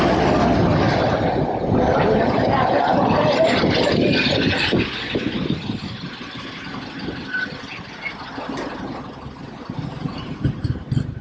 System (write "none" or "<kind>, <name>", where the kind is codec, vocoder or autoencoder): none